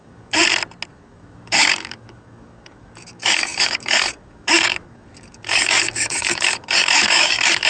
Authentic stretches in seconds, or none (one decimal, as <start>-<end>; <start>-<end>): 0.4-0.9